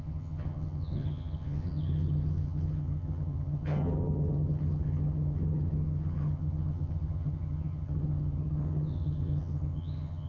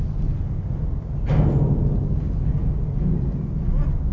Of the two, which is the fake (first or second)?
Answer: first